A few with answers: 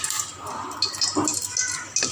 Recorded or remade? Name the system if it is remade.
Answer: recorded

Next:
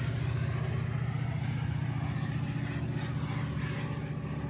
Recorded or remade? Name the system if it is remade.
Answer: recorded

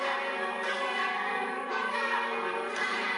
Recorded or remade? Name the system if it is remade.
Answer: remade, codec, SNAC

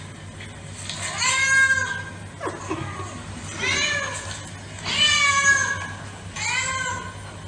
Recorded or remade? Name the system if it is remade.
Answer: recorded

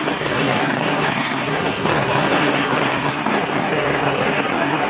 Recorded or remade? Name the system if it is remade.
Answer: remade, codec, SNAC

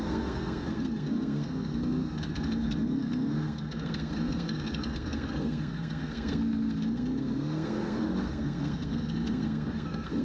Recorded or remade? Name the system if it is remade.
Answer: remade, codec, SNAC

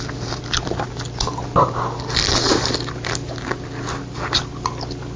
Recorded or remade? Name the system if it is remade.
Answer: recorded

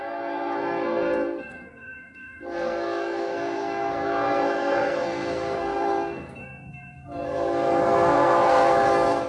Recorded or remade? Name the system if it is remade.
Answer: remade, codec, SNAC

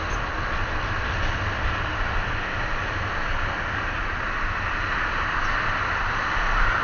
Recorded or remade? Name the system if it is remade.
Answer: recorded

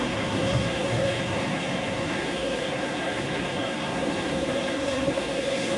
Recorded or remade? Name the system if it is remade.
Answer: remade, codec, SNAC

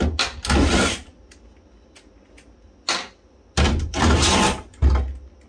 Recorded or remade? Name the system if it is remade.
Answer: recorded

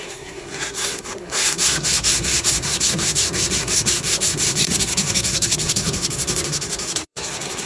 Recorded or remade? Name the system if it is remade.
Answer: remade, codec, SNAC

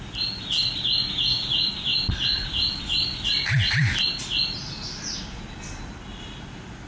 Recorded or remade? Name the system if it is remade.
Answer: recorded